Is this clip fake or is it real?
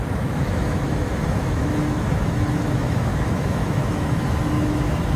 fake